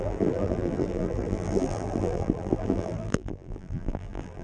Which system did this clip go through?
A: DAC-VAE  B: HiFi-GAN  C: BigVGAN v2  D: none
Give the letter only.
C